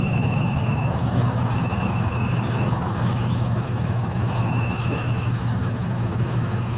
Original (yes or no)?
no